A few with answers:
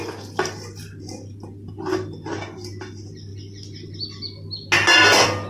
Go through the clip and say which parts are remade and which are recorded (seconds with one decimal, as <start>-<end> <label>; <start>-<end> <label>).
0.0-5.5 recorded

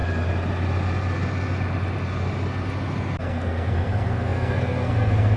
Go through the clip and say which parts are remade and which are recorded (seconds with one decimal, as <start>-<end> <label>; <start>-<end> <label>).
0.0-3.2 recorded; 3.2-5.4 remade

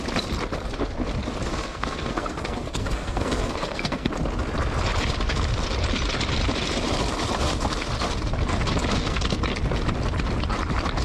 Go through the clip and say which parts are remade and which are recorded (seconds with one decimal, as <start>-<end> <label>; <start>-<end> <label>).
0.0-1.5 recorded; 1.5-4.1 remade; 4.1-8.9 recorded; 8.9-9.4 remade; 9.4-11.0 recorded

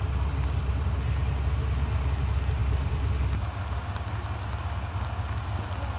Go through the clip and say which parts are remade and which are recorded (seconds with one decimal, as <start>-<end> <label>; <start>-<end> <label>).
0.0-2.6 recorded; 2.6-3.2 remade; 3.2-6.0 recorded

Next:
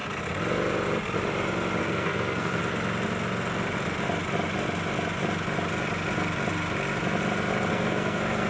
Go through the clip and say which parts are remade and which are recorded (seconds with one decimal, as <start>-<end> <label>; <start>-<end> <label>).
0.0-1.8 recorded; 1.8-2.6 remade; 2.6-7.7 recorded; 7.7-8.5 remade